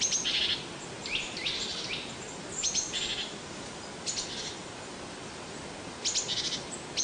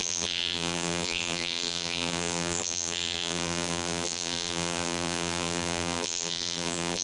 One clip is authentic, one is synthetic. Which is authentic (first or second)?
first